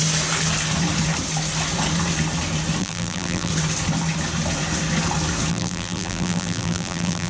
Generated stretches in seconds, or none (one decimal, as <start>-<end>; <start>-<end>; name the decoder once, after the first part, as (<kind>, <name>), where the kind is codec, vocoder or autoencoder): 2.8-3.5 (vocoder, BigVGAN v2); 5.5-7.3